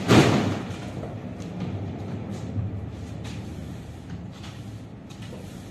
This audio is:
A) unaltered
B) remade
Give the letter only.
B